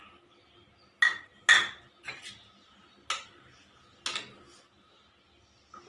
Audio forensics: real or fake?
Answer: real